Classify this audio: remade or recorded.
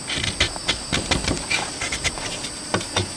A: recorded